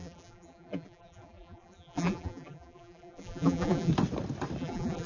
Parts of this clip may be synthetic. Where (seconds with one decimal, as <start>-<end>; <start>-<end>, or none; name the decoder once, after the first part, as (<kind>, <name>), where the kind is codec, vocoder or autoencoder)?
0.0-3.9 (vocoder, BigVGAN v2); 4.6-5.1